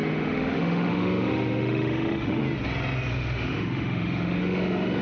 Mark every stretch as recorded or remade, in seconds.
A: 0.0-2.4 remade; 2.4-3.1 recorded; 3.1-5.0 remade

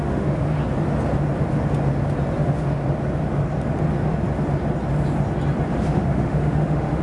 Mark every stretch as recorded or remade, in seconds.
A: 0.0-0.6 remade; 0.6-2.4 recorded; 2.4-2.8 remade; 2.8-5.7 recorded; 5.7-7.0 remade

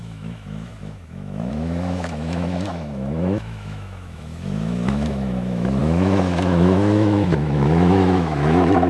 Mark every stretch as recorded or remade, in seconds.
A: 0.0-8.9 remade

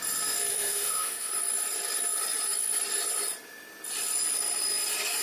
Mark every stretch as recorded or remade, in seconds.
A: 0.0-0.5 recorded; 0.5-1.3 remade; 1.3-5.2 recorded

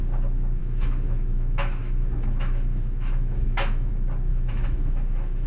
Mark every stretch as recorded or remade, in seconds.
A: 0.0-0.6 recorded; 0.6-3.9 remade; 3.9-4.3 recorded; 4.3-5.5 remade

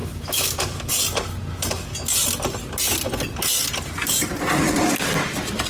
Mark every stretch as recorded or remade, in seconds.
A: 0.0-0.9 remade; 0.9-5.7 recorded

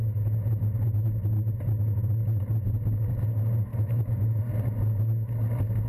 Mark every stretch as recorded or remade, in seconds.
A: 0.0-3.7 recorded; 3.7-4.4 remade; 4.4-5.9 recorded

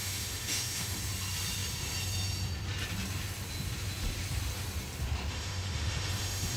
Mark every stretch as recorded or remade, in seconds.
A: 0.0-1.0 remade; 1.0-5.3 recorded; 5.3-6.6 remade